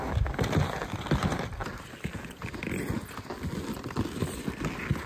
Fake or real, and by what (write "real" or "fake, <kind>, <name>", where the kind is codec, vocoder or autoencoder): real